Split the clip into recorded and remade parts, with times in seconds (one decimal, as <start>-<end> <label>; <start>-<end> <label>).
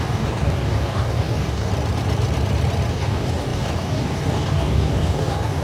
0.0-1.7 remade; 1.7-2.9 recorded; 2.9-5.6 remade